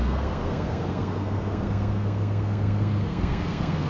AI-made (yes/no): yes